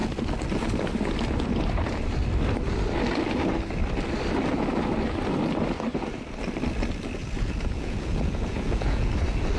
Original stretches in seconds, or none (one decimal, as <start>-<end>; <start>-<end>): 0.0-7.2; 9.1-9.6